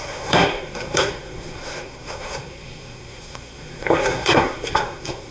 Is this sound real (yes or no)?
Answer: no